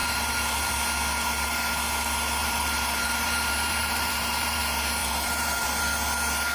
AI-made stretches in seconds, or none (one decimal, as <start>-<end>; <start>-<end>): 0.0-0.7; 2.4-4.6; 5.0-5.8